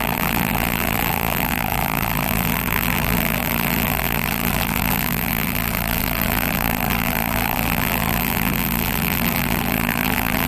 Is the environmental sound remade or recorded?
remade